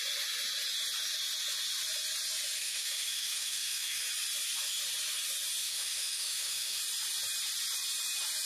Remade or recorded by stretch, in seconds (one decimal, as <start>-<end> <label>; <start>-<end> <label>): 0.0-2.6 recorded; 2.6-4.0 remade; 4.0-5.6 recorded; 5.6-6.8 remade; 6.8-8.5 recorded